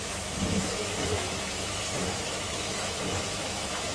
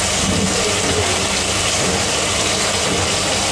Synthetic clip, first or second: first